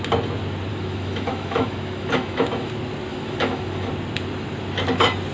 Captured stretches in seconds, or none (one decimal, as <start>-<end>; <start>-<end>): 0.0-0.7; 2.7-3.1; 3.9-5.3